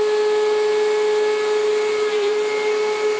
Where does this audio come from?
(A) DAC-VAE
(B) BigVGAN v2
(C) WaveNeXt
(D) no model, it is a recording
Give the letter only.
D